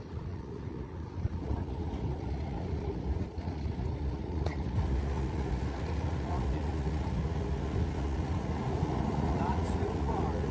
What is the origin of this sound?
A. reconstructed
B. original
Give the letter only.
A